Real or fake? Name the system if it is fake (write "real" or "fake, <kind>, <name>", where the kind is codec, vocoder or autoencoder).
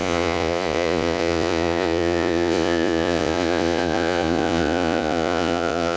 fake, vocoder, Vocos